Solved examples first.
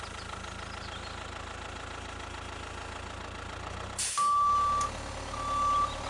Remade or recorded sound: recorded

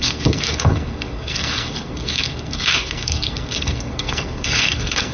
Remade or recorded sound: remade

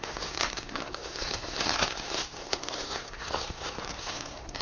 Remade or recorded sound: remade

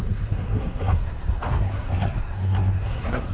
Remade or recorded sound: remade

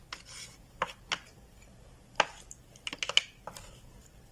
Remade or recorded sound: recorded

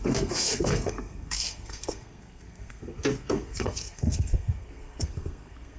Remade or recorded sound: remade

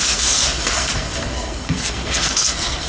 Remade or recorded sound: remade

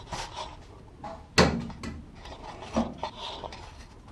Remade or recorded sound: recorded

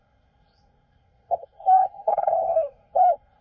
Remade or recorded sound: remade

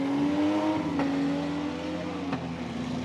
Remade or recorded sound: recorded